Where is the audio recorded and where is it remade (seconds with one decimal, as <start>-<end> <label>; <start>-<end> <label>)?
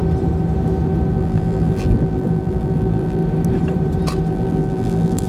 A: 0.0-1.1 recorded; 1.1-3.2 remade; 3.2-4.3 recorded; 4.3-5.3 remade